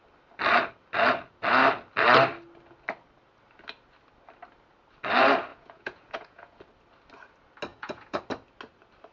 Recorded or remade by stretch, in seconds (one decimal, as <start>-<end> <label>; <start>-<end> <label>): 0.0-5.5 recorded; 5.5-6.6 remade; 6.6-7.7 recorded; 7.7-8.2 remade; 8.2-9.1 recorded